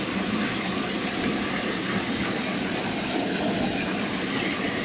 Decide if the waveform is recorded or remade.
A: recorded